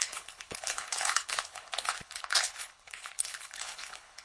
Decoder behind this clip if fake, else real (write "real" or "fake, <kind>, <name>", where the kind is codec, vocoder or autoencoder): fake, codec, HILCodec